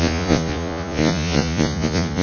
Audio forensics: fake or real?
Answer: fake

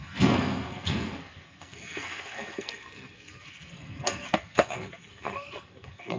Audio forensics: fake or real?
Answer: fake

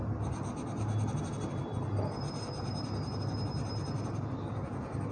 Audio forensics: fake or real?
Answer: real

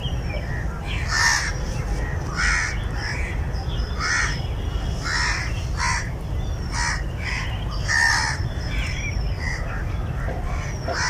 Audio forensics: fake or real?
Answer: real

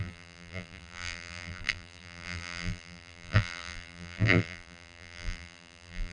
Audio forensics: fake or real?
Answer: fake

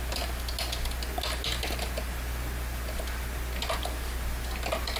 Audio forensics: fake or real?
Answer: real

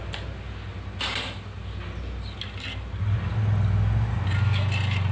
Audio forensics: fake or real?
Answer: real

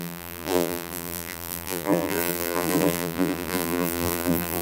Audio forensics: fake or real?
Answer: fake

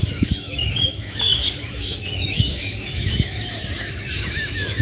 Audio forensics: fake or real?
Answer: fake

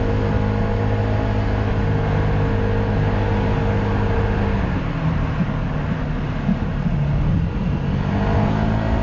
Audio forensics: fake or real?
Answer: real